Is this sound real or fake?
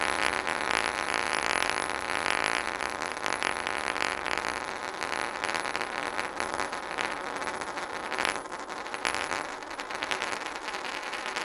real